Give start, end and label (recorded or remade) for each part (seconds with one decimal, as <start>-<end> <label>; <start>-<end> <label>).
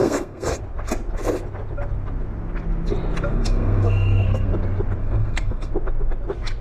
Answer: 0.0-0.6 remade; 0.6-3.3 recorded; 3.3-4.5 remade; 4.5-5.0 recorded; 5.0-5.7 remade; 5.7-6.6 recorded